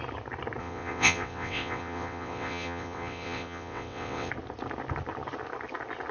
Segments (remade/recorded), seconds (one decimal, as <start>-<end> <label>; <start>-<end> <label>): 0.0-0.6 recorded; 0.6-4.3 remade; 4.3-6.1 recorded